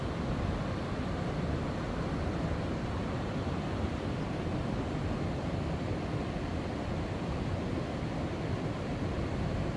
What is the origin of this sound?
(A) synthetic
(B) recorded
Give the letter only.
B